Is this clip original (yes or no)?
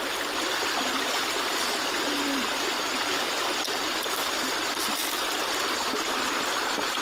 yes